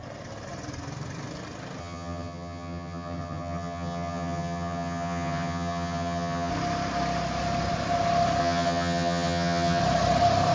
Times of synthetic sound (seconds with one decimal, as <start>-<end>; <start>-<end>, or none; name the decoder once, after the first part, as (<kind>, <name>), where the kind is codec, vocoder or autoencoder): 1.8-6.5 (vocoder, HiFi-GAN); 8.4-9.8

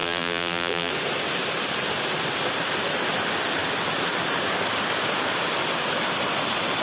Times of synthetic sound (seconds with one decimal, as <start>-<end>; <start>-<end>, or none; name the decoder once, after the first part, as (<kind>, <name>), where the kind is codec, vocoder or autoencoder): 0.0-0.9 (vocoder, BigVGAN v2)

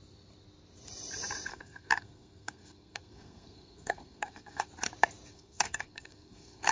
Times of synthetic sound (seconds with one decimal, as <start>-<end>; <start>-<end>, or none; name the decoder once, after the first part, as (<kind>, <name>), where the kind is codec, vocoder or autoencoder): 1.5-4.7 (codec, SNAC); 5.3-6.7

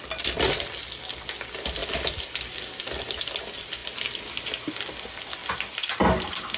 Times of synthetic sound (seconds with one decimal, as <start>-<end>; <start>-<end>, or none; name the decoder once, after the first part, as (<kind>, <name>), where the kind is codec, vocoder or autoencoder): none

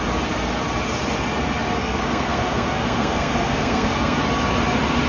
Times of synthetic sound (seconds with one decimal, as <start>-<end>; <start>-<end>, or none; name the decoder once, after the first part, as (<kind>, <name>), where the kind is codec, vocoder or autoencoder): 1.8-4.2 (codec, SNAC)